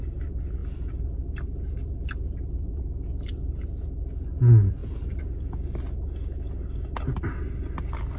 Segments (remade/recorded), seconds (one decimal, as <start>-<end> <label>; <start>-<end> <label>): 0.0-8.2 recorded